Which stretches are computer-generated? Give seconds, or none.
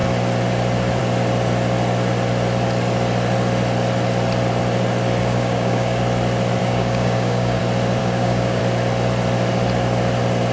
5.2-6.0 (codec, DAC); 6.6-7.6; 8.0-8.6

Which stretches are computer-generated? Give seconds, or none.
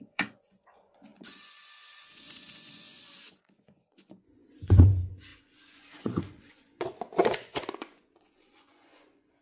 0.0-9.4 (vocoder, Vocos)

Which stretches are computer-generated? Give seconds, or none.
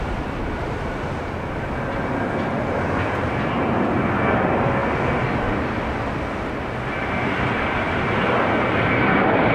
none